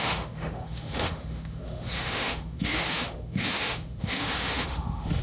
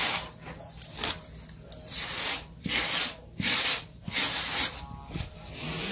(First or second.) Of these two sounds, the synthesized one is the first